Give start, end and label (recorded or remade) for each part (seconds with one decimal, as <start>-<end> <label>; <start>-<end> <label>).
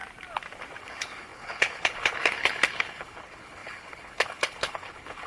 0.0-0.8 recorded; 0.8-5.3 remade